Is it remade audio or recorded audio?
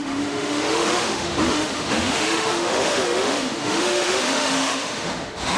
remade